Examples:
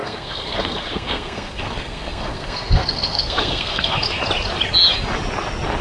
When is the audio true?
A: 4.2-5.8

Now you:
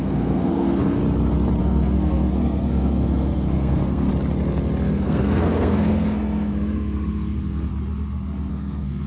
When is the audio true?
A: 1.0-1.6; 4.1-4.9; 7.7-8.5

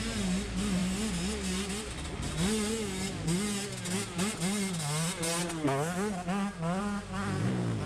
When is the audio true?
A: 0.0-7.9

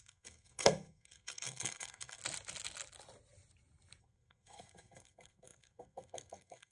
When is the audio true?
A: 2.2-4.0

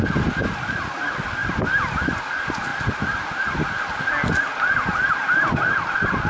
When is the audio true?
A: 0.0-6.3

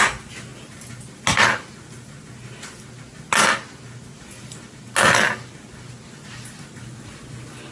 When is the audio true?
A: 0.0-7.7

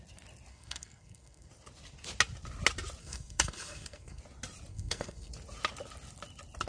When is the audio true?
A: 0.0-0.5; 1.5-3.0; 4.2-4.7; 5.3-6.7